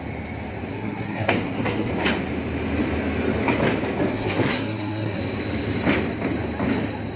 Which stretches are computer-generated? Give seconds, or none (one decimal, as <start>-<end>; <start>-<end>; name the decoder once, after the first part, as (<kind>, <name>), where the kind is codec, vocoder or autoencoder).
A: 0.7-1.9 (codec, SNAC); 4.1-5.2